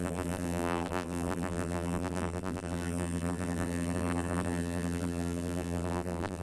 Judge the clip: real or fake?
fake